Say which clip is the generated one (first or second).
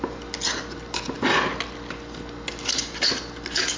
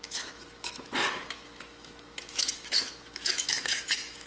second